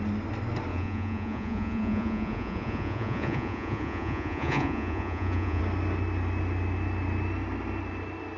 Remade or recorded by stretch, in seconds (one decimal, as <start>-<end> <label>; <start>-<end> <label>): 0.0-0.7 recorded; 0.7-5.6 remade; 5.6-8.4 recorded